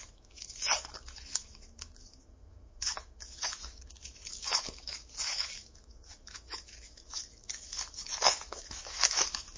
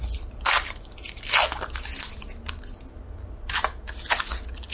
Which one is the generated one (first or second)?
first